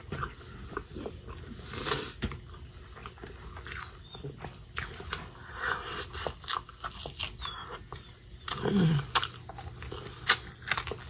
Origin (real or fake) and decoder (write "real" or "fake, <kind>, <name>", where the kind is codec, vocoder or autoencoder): real